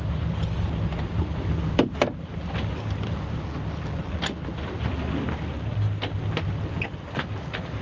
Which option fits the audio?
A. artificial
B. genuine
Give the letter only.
B